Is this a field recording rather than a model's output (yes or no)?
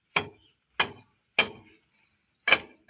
yes